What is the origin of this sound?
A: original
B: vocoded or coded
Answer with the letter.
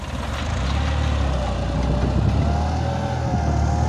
A